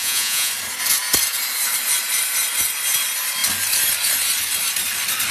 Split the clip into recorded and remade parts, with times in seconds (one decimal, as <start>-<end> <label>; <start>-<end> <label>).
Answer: 0.0-0.5 remade; 0.5-5.3 recorded